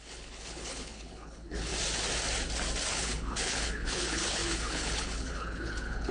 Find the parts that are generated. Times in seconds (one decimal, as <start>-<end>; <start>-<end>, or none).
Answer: 0.0-1.7; 2.9-6.1